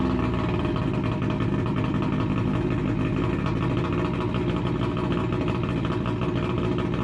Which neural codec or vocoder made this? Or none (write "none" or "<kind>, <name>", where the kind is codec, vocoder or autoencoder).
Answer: none